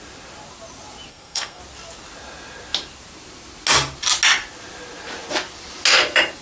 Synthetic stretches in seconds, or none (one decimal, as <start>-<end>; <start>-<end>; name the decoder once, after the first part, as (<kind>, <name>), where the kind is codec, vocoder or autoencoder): 1.1-1.6 (codec, SNAC)